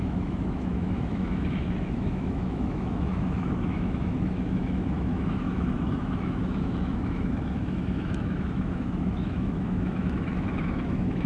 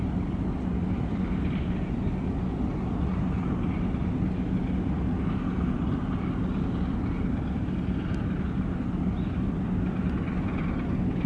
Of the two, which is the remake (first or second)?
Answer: first